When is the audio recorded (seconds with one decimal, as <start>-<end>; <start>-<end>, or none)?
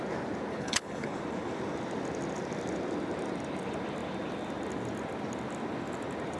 0.0-0.5; 1.2-6.4